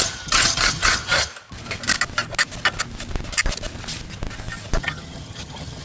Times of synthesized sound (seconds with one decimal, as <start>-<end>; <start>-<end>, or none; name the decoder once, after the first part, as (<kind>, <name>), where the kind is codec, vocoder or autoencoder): 0.0-1.3 (vocoder, HiFi-GAN); 4.8-5.8